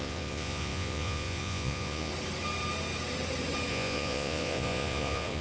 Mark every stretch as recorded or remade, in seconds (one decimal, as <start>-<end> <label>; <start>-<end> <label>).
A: 0.0-2.1 remade; 2.1-3.7 recorded; 3.7-5.4 remade